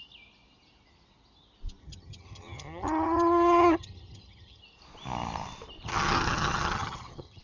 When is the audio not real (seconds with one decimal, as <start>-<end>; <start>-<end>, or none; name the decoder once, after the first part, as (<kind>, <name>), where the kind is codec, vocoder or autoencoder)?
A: 1.8-4.6 (vocoder, HiFi-GAN); 5.9-7.4